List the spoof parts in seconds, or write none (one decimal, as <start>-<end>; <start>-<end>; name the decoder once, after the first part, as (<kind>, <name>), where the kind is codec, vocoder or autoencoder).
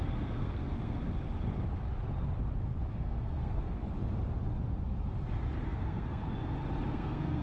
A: 0.0-1.0 (codec, SNAC); 2.9-3.8; 5.6-6.2; 6.9-7.4